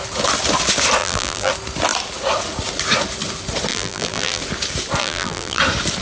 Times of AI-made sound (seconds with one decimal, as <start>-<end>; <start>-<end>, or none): 1.0-1.5; 3.7-4.4; 5.0-5.6